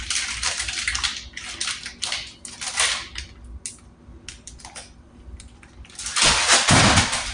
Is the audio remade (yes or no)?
no